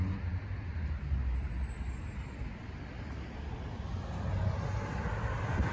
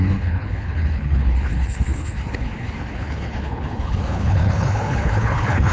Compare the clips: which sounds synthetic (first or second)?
second